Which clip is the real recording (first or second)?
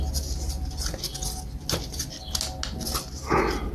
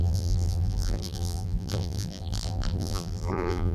first